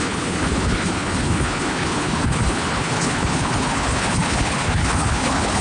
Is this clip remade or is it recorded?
remade